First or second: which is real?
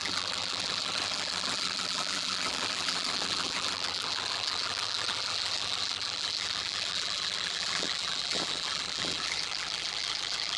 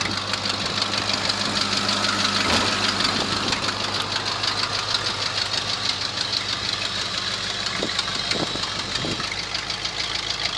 second